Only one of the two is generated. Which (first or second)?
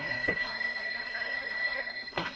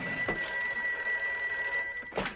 first